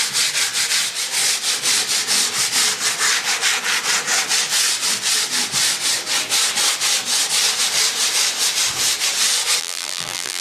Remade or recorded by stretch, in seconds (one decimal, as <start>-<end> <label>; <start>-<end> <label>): 0.0-9.6 recorded; 9.6-10.4 remade

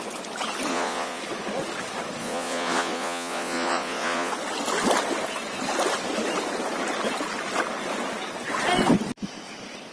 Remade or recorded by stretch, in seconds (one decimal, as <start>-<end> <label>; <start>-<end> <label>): 0.0-0.7 recorded; 0.7-1.2 remade; 1.2-2.2 recorded; 2.2-4.3 remade; 4.3-9.9 recorded

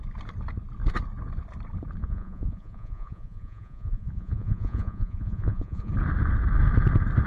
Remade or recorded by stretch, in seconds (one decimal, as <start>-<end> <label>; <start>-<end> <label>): 0.0-2.0 recorded; 2.0-5.9 remade; 5.9-7.3 recorded

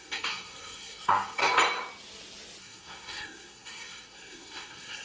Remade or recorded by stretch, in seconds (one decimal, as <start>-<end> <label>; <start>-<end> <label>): 0.0-1.4 remade; 1.4-2.6 recorded; 2.6-5.0 remade